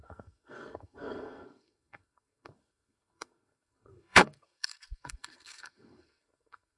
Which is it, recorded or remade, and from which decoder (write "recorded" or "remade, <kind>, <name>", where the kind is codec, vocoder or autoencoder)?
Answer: remade, codec, SNAC